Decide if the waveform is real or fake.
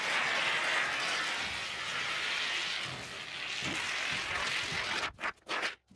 real